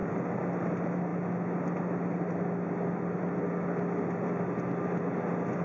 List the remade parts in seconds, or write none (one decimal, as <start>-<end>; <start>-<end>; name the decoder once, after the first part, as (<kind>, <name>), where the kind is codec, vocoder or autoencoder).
none